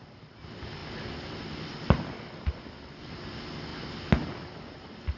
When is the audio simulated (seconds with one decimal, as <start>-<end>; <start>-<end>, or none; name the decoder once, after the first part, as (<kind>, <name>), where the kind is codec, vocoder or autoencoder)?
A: none